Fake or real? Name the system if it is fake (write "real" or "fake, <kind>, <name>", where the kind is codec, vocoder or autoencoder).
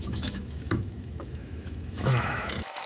fake, autoencoder, DAC-VAE